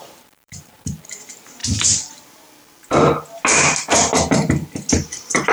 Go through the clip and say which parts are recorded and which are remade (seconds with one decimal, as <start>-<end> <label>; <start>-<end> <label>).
0.0-1.6 remade; 1.6-4.9 recorded; 4.9-5.5 remade